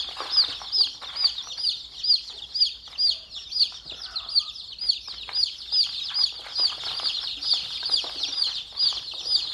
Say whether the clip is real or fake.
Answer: real